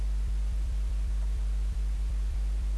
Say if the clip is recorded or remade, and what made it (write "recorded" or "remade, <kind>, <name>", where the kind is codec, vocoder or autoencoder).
remade, vocoder, BigVGAN v2